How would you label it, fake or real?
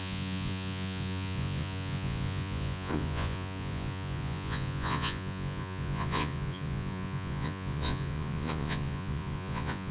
fake